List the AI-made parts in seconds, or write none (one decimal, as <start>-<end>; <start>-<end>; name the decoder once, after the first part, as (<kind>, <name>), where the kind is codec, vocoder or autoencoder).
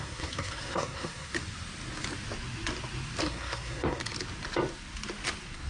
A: 0.0-1.3 (codec, SNAC); 3.2-4.0